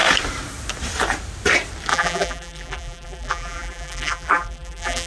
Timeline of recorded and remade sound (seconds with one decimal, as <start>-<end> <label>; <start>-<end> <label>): 0.0-1.9 recorded; 1.9-5.1 remade